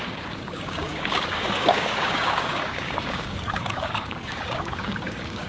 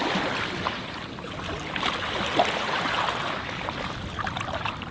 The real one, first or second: second